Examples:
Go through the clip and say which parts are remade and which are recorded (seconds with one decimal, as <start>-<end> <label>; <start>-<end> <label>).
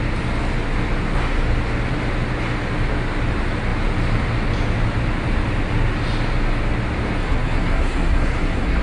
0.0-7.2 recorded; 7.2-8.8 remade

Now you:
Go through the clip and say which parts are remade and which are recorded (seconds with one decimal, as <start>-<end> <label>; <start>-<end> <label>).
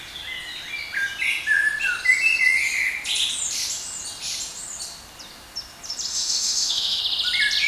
0.0-6.1 recorded; 6.1-7.0 remade; 7.0-7.7 recorded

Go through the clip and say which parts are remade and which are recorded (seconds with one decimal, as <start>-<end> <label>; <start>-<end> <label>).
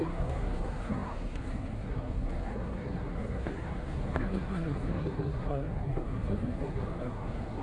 0.0-7.6 remade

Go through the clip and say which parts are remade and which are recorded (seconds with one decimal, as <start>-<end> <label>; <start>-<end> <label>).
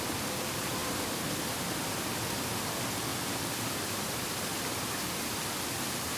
0.0-0.8 recorded; 0.8-1.4 remade; 1.4-3.1 recorded; 3.1-4.3 remade; 4.3-6.2 recorded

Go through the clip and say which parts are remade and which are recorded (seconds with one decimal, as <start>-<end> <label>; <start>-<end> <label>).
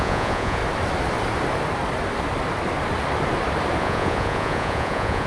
0.0-0.6 remade; 0.6-3.8 recorded; 3.8-5.3 remade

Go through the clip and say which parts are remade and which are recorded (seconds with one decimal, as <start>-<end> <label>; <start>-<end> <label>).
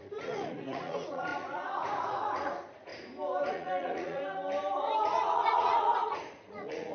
0.0-2.9 remade; 2.9-3.5 recorded; 3.5-4.2 remade; 4.2-5.0 recorded; 5.0-6.9 remade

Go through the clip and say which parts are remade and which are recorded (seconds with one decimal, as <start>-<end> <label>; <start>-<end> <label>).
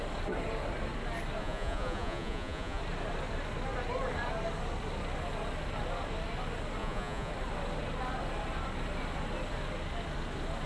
0.0-1.4 recorded; 1.4-2.8 remade; 2.8-6.8 recorded; 6.8-7.3 remade; 7.3-10.7 recorded